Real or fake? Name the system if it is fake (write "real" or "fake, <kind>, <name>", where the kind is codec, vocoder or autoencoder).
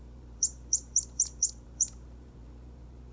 fake, vocoder, BigVGAN v2